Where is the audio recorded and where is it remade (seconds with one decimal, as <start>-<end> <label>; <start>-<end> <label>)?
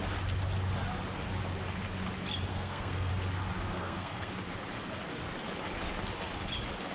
0.0-2.5 recorded; 2.5-3.1 remade; 3.1-3.7 recorded; 3.7-4.3 remade; 4.3-6.9 recorded